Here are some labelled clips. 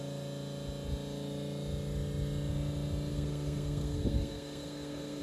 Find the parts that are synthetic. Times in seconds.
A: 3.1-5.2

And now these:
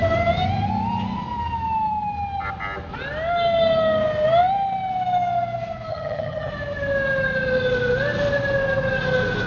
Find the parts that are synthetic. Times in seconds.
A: 5.9-6.5

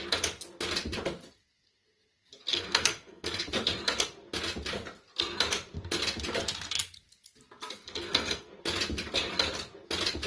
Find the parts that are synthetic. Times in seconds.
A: 2.5-3.5; 7.8-8.6